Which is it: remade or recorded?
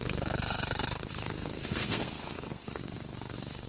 remade